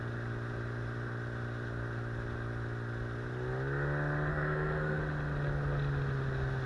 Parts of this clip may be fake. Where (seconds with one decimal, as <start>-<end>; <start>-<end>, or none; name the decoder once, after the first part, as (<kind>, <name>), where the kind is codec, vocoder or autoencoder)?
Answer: 4.3-5.0 (codec, SNAC)